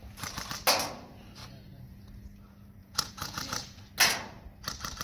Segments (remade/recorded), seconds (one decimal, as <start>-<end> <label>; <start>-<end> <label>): 0.0-1.4 recorded; 1.4-2.0 remade; 2.0-2.8 recorded; 2.8-3.8 remade; 3.8-5.0 recorded